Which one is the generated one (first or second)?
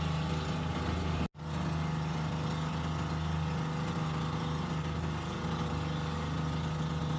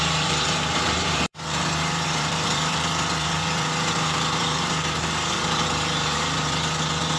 second